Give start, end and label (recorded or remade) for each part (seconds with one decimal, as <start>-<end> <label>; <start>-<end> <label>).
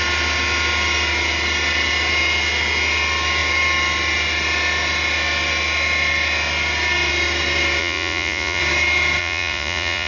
0.0-7.8 recorded; 7.8-8.6 remade; 8.6-9.2 recorded; 9.2-10.1 remade